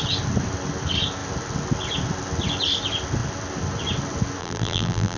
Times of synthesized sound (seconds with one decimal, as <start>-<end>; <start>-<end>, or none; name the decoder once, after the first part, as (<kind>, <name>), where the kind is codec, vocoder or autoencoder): 4.4-5.2 (vocoder, BigVGAN v2)